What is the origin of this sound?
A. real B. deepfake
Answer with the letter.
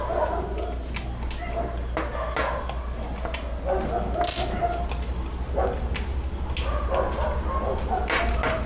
A